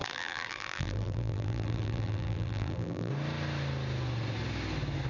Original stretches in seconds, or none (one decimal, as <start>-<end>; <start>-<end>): 3.1-5.1